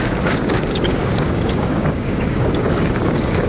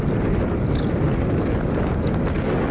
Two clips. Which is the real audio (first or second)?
second